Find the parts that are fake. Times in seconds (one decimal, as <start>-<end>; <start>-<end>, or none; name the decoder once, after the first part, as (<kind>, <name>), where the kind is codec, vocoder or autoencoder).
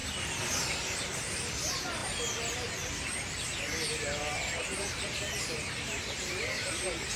none